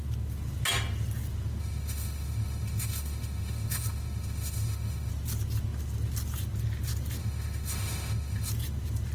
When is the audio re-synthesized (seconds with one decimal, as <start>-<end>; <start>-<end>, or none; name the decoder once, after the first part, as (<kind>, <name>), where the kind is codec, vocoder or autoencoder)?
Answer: 1.6-5.1 (autoencoder, DAC-VAE); 7.2-8.5